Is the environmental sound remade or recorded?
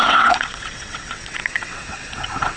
remade